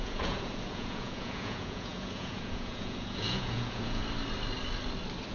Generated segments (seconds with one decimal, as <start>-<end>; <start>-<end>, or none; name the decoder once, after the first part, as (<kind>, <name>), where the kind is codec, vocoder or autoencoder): 0.0-4.0 (vocoder, Vocos)